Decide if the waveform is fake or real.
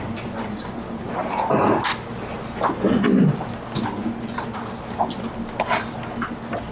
real